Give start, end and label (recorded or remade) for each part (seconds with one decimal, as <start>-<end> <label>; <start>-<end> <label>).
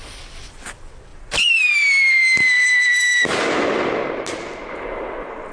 0.0-5.5 recorded